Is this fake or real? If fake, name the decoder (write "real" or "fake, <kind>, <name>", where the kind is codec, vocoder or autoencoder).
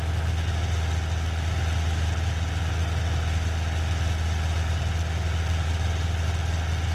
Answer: real